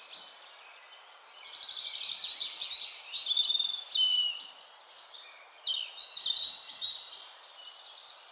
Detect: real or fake real